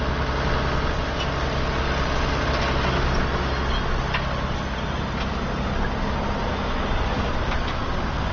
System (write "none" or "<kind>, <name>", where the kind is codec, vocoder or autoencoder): none